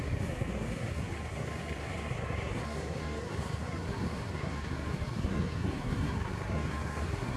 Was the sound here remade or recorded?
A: remade